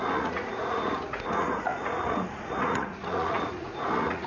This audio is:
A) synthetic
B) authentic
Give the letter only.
A